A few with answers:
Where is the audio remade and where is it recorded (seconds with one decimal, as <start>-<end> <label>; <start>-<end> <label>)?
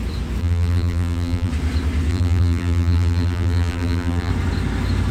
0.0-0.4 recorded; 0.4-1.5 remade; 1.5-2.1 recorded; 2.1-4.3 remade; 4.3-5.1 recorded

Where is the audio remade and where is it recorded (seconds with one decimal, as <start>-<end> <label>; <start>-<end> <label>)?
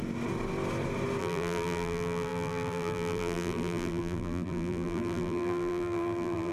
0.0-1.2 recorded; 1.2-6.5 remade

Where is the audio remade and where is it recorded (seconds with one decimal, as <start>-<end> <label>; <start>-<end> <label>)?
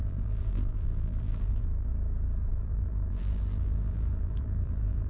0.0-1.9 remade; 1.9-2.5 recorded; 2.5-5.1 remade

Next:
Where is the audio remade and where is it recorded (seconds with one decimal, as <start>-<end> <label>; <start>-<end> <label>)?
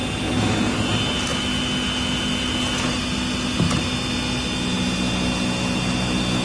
0.0-6.4 recorded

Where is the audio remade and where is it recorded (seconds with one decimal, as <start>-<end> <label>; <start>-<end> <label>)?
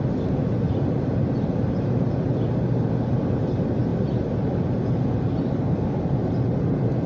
0.0-7.1 recorded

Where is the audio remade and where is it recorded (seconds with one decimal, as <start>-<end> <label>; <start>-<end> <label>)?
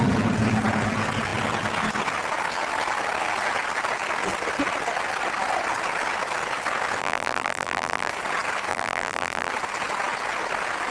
0.0-7.0 recorded; 7.0-8.1 remade; 8.1-8.7 recorded; 8.7-9.5 remade; 9.5-10.9 recorded